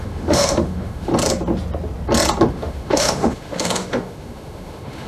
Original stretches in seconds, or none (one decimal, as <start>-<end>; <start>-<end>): 1.1-2.5